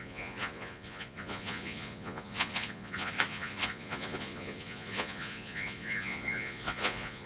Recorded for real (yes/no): no